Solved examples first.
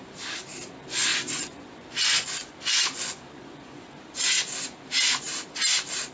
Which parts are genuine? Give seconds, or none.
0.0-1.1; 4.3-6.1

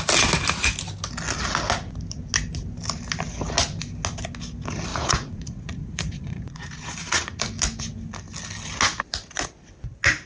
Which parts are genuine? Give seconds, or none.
0.0-4.9; 7.4-10.3

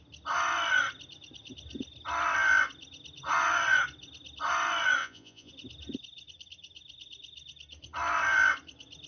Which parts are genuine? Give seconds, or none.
0.0-5.0; 5.5-9.1